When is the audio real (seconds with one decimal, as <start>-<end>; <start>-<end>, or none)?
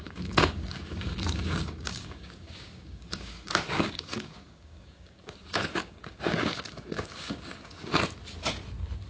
7.9-9.1